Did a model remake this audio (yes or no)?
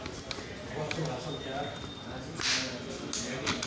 no